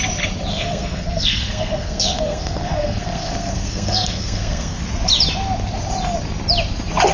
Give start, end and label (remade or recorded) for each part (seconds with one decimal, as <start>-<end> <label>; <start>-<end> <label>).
0.0-0.5 recorded; 0.5-4.8 remade; 4.8-7.1 recorded